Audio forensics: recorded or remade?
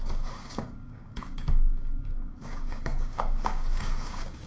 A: remade